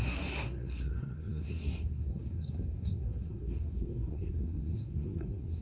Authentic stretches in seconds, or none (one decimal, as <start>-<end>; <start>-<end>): none